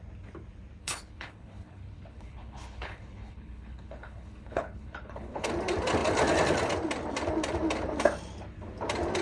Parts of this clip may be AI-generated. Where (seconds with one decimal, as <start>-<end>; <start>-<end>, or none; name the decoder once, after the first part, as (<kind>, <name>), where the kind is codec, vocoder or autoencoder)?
0.8-5.5 (codec, HILCodec)